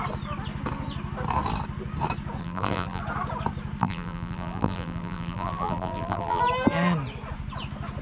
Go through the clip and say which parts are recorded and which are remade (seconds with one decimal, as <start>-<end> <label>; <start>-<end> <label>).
0.0-2.4 recorded; 2.4-3.0 remade; 3.0-3.8 recorded; 3.8-6.4 remade; 6.4-8.0 recorded